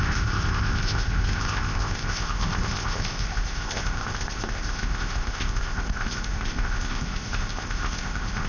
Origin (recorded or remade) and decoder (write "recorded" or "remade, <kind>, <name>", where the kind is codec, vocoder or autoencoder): remade, codec, ZipCodec